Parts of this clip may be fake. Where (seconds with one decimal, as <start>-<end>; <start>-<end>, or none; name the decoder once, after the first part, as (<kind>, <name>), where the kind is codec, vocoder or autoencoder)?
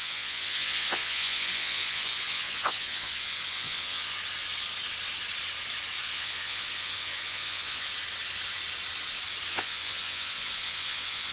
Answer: 0.0-4.2 (vocoder, Vocos); 6.0-7.9; 9.5-11.3